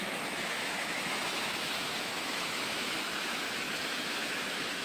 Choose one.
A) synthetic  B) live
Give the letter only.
A